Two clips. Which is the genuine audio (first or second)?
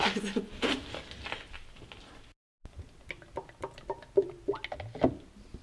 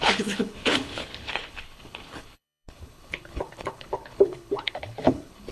first